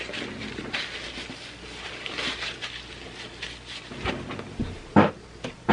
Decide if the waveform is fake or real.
real